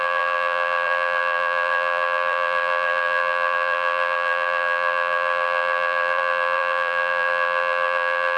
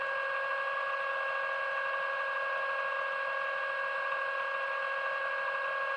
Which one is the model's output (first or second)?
first